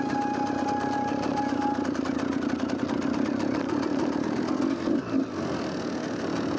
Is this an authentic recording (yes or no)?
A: yes